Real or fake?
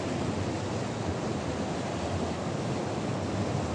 real